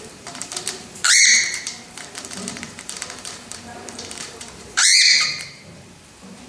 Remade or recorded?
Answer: remade